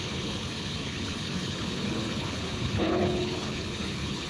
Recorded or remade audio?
remade